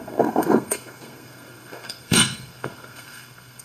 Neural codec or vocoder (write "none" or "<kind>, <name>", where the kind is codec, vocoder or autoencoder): codec, SNAC